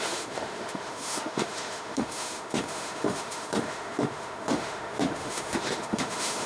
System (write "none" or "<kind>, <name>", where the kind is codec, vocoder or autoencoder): autoencoder, DAC-VAE